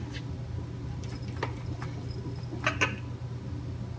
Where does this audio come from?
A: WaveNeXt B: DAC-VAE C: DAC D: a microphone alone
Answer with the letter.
D